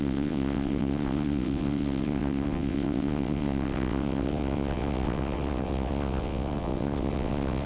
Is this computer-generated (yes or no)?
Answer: yes